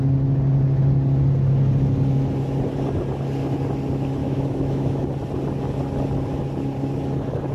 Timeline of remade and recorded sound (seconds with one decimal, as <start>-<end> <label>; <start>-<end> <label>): 0.0-4.2 recorded; 4.2-5.0 remade; 5.0-7.5 recorded

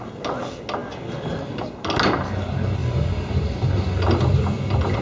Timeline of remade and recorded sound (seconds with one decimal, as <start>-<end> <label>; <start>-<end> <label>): 0.0-2.8 recorded; 2.8-4.5 remade; 4.5-5.0 recorded

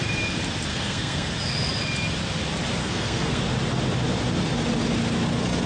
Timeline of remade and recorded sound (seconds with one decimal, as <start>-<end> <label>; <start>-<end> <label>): 0.0-0.7 recorded; 0.7-1.3 remade; 1.3-2.8 recorded; 2.8-3.4 remade; 3.4-5.7 recorded

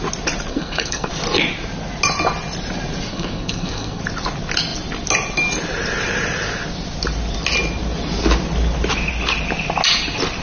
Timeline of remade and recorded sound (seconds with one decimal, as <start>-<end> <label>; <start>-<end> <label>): 0.0-0.5 recorded; 0.5-1.1 remade; 1.1-3.1 recorded; 3.1-4.0 remade; 4.0-10.4 recorded

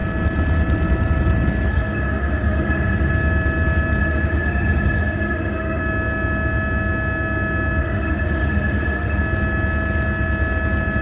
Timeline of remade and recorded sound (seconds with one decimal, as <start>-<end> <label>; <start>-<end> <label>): 0.0-1.7 recorded; 1.7-3.1 remade; 3.1-4.0 recorded; 4.0-5.8 remade; 5.8-7.8 recorded; 7.8-9.2 remade; 9.2-11.0 recorded

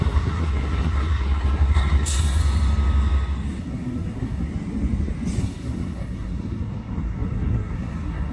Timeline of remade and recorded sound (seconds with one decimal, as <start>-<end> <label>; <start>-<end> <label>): 0.0-2.4 remade; 2.4-3.6 recorded; 3.6-4.5 remade; 4.5-5.4 recorded; 5.4-8.3 remade

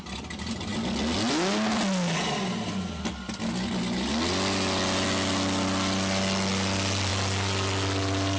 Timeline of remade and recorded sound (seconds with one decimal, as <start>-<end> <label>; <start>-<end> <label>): 0.0-8.4 recorded